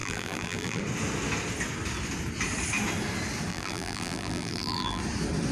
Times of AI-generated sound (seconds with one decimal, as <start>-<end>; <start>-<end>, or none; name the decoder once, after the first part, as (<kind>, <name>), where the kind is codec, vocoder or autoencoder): 0.0-0.8 (vocoder, BigVGAN v2); 3.5-5.0